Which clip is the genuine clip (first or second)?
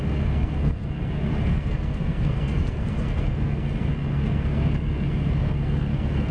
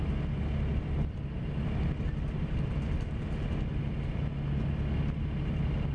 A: second